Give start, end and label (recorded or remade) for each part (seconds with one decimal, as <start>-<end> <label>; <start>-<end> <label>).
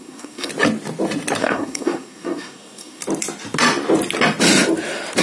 0.0-0.5 remade; 0.5-1.4 recorded; 1.4-3.0 remade; 3.0-5.2 recorded